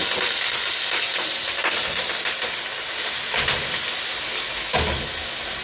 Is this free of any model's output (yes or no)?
yes